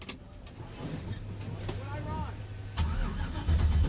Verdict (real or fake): real